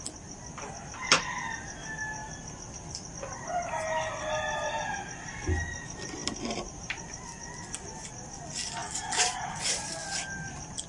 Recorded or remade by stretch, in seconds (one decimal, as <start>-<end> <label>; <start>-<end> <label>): 0.0-2.2 recorded; 2.2-3.1 remade; 3.1-6.2 recorded; 6.2-7.0 remade; 7.0-10.9 recorded